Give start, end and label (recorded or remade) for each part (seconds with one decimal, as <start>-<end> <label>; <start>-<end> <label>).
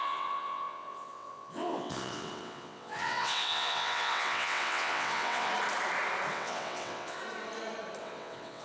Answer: 0.0-5.5 remade; 5.5-6.3 recorded; 6.3-7.2 remade; 7.2-8.0 recorded; 8.0-8.6 remade